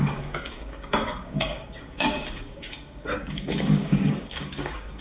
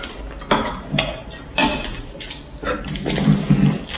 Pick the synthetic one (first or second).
first